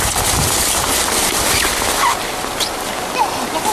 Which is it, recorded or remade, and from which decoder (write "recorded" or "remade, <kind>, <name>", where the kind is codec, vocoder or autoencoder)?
recorded